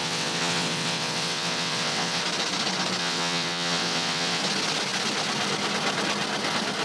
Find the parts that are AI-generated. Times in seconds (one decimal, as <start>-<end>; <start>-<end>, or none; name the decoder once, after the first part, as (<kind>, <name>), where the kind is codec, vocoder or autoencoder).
0.0-2.2 (vocoder, WaveNeXt); 3.0-4.4

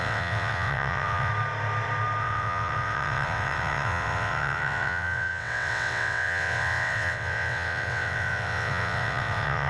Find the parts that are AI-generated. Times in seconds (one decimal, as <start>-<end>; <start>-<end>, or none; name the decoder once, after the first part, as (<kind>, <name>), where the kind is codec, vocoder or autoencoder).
0.0-1.3 (vocoder, WaveNeXt); 2.2-9.7

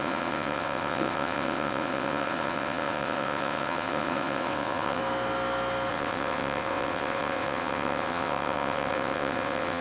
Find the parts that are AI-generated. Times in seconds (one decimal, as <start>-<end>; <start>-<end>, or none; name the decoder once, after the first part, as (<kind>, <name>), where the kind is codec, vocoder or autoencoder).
0.0-5.0 (vocoder, WaveNeXt); 5.9-9.8

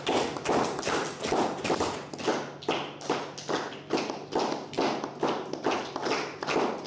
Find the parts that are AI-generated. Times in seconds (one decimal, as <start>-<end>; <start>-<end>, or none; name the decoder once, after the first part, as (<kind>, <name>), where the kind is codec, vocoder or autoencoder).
none

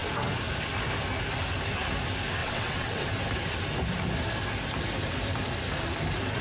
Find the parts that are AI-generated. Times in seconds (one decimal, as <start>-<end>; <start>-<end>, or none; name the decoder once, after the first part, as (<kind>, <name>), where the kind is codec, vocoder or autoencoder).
2.4-3.1 (vocoder, WaveNeXt)

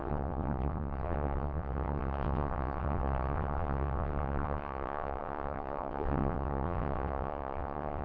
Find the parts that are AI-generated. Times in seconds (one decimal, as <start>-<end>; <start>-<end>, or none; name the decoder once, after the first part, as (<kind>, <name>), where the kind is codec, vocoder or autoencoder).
0.0-8.0 (vocoder, WaveNeXt)

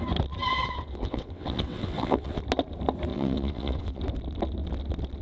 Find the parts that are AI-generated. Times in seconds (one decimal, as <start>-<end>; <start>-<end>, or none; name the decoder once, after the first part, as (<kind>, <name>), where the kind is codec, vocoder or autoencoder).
0.5-2.4 (vocoder, WaveNeXt); 3.1-4.0